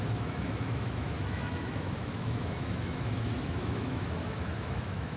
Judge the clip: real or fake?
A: fake